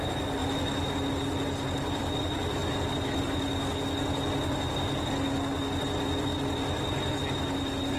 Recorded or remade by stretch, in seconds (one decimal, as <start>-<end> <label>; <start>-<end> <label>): 0.0-8.0 recorded